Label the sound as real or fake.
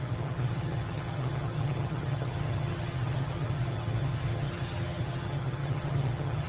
fake